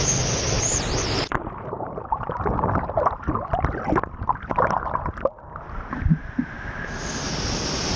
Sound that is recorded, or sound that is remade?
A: recorded